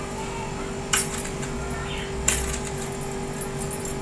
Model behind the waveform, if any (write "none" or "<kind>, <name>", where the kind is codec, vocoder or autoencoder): none